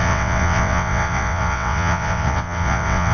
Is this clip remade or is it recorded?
remade